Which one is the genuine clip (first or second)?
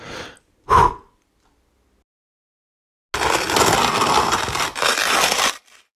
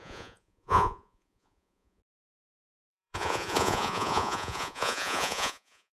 first